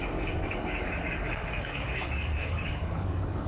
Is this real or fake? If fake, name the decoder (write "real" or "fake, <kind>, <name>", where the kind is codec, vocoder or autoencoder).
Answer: fake, codec, DAC